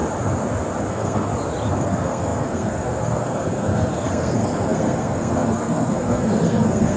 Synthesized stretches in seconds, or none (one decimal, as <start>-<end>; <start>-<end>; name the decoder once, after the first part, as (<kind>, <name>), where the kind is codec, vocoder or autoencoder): 0.9-1.3 (codec, SNAC); 1.8-7.0